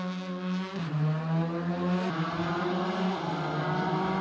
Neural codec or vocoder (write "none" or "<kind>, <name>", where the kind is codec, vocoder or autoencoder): none